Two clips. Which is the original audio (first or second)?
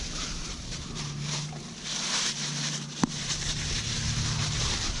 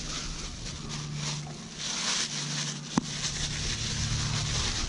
second